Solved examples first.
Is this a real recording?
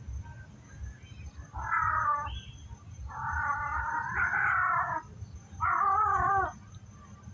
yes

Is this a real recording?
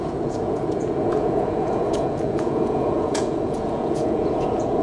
no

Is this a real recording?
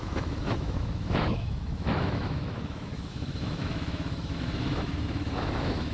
no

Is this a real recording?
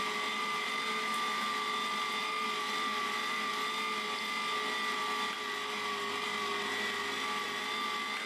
yes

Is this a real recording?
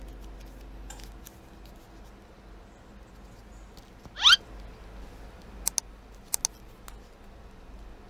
yes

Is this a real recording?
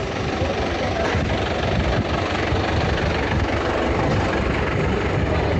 no